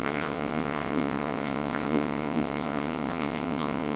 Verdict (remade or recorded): remade